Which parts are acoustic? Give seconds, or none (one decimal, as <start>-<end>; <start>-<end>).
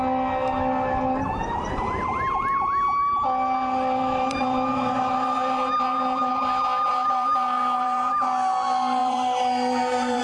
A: 0.0-3.0; 6.3-6.9; 8.1-9.0